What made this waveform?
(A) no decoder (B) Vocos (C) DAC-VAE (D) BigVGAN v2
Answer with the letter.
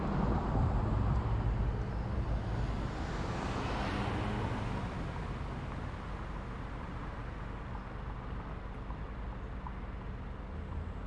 A